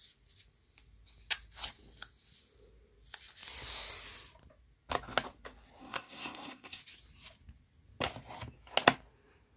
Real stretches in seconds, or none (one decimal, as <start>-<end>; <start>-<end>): 0.0-5.8; 6.8-9.6